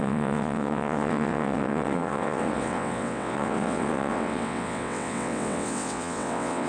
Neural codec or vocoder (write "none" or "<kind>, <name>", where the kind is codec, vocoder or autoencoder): vocoder, WaveNeXt